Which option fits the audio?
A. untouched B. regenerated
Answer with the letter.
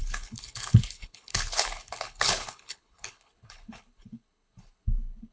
B